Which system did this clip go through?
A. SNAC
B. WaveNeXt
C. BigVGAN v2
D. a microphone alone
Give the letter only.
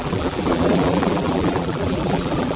C